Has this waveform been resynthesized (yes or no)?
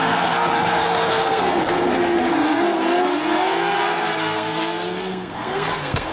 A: yes